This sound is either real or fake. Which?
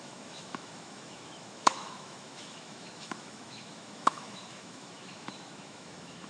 fake